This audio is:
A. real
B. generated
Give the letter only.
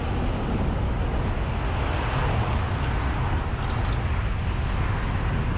A